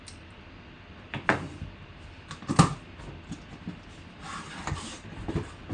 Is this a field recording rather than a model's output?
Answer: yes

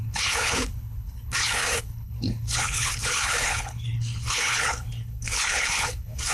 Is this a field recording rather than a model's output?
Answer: no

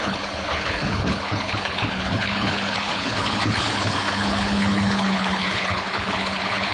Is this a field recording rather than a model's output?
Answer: no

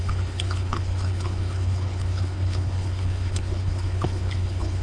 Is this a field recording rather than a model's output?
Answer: no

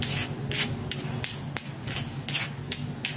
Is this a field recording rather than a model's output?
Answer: yes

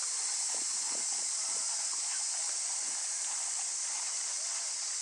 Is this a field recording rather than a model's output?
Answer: yes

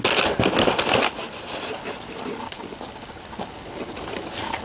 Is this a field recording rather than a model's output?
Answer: yes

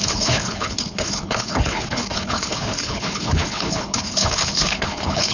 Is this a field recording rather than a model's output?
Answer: no